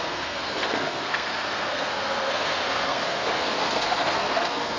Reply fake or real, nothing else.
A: fake